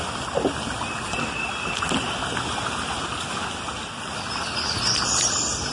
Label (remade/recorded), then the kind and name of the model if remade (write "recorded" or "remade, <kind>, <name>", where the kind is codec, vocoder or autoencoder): recorded